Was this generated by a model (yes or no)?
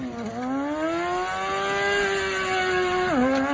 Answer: no